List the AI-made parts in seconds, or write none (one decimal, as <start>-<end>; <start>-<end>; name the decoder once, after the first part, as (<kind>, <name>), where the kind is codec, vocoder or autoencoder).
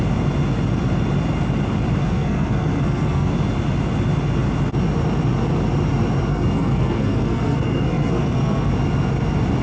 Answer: 2.0-3.3 (codec, SNAC); 6.3-8.7